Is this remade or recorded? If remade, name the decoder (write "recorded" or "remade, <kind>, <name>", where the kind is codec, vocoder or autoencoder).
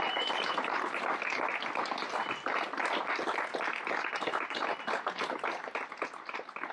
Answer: recorded